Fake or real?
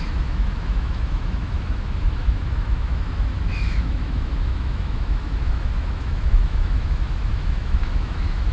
fake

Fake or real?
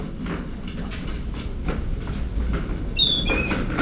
real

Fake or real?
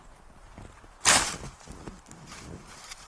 real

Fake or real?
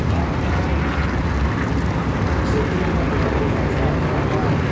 real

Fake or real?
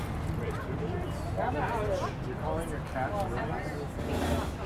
real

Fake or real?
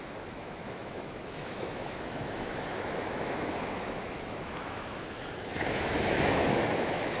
fake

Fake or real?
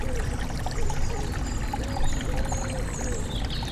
real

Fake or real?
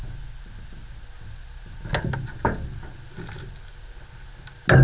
real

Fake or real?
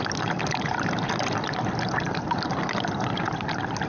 real